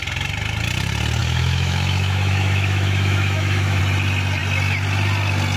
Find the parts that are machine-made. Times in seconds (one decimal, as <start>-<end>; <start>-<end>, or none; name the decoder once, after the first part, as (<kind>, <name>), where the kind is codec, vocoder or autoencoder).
1.2-3.8 (autoencoder, DAC-VAE)